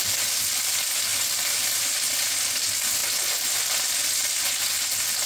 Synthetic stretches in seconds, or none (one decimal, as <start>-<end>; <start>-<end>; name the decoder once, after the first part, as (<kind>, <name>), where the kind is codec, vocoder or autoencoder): 1.1-1.7 (vocoder, BigVGAN v2)